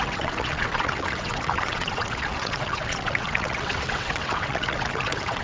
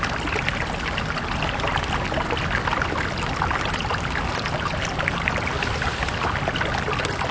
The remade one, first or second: first